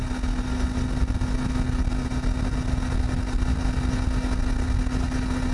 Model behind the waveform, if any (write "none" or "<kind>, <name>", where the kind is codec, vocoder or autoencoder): none